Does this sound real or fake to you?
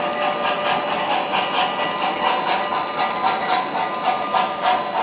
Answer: real